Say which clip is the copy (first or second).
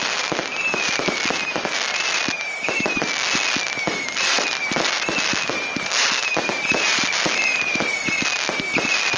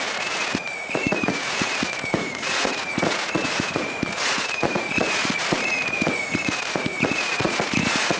second